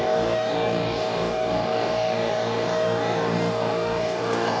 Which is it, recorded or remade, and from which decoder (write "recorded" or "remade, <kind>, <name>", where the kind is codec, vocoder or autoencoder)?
remade, codec, DAC